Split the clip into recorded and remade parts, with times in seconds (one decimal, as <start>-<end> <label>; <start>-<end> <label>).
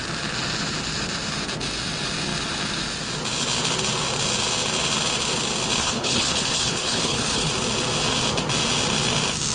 0.0-5.8 recorded; 5.8-7.5 remade; 7.5-9.5 recorded